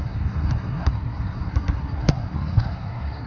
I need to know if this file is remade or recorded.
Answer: remade